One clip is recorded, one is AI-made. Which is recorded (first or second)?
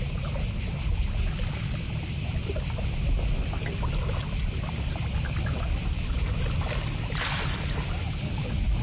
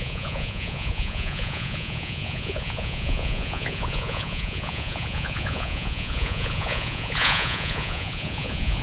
first